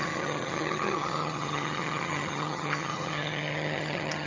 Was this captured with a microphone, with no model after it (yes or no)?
no